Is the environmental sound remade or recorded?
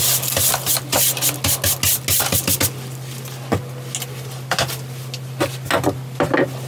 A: recorded